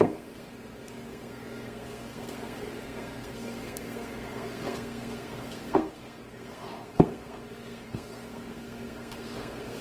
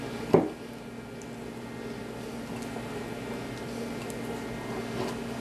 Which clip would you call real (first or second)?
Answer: second